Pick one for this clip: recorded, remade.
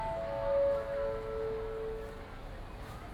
recorded